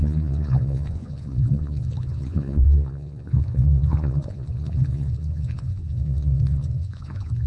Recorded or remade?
remade